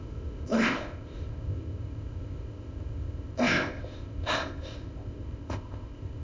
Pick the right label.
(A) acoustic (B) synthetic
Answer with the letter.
B